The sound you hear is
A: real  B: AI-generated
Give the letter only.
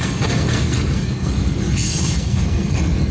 B